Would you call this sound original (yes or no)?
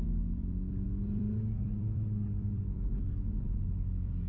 no